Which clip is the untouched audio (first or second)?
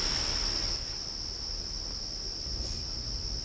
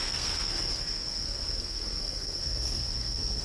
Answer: first